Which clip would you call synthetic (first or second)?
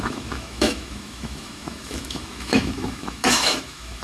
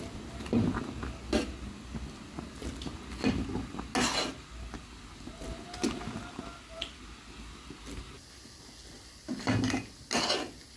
first